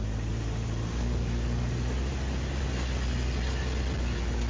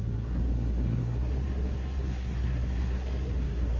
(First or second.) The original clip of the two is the first